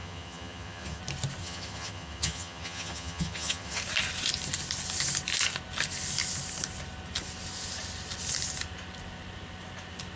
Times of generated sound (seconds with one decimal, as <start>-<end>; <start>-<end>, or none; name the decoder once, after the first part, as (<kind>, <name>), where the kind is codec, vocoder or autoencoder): 0.0-1.0 (vocoder, HiFi-GAN); 1.4-3.8